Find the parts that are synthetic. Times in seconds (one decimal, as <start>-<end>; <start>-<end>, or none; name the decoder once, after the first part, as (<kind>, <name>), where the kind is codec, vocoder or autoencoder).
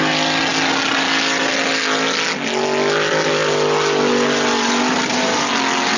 none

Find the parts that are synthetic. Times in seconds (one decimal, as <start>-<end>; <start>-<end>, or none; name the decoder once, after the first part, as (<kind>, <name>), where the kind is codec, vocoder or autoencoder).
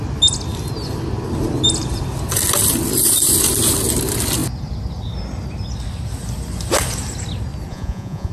7.7-8.3 (vocoder, Vocos)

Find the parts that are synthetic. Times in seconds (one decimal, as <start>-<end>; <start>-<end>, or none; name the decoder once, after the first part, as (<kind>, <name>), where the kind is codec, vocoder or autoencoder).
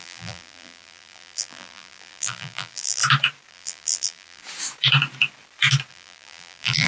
0.0-3.0 (vocoder, BigVGAN v2); 3.5-4.4; 5.9-6.9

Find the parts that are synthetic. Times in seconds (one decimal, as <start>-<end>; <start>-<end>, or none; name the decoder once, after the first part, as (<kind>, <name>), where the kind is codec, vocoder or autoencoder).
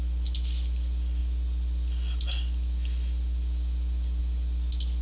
none